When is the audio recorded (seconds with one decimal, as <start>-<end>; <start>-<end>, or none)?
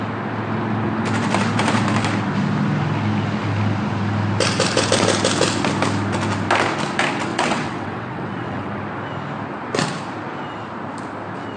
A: 0.0-7.3; 8.8-11.6